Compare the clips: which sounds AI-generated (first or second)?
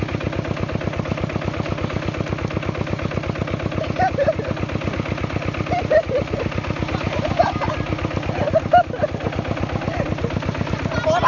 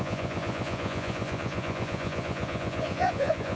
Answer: second